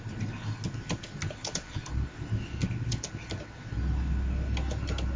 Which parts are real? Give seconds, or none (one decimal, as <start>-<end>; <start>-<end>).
0.0-5.2